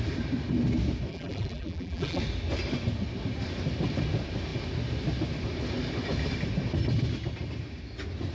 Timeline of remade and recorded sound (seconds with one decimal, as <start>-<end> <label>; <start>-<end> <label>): 0.0-1.1 recorded; 1.1-2.2 remade; 2.2-8.3 recorded

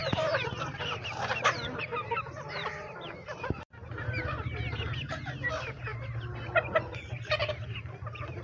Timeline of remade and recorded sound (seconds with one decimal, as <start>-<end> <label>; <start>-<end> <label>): 0.0-4.7 remade; 4.7-7.4 recorded; 7.4-8.4 remade

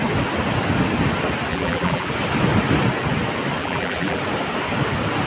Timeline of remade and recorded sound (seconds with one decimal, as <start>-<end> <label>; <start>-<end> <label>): 0.0-1.5 recorded; 1.5-2.1 remade; 2.1-3.6 recorded; 3.6-4.2 remade; 4.2-5.3 recorded

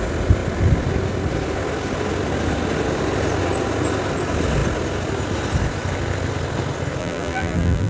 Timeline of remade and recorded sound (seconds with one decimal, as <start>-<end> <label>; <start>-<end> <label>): 0.0-7.0 recorded; 7.0-7.9 remade

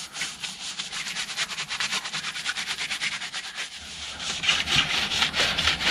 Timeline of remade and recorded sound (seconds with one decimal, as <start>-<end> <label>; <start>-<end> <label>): 0.0-1.9 remade; 1.9-3.1 recorded; 3.1-5.9 remade

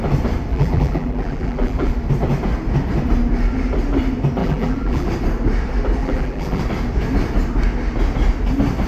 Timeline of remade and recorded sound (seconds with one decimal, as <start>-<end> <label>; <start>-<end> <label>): 0.0-0.5 recorded; 0.5-1.9 remade; 1.9-4.4 recorded; 4.4-5.1 remade; 5.1-6.0 recorded; 6.0-6.6 remade; 6.6-8.9 recorded

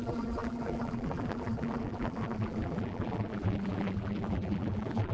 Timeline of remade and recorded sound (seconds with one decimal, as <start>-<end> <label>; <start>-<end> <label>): 0.0-5.1 remade